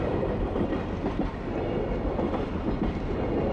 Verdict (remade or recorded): recorded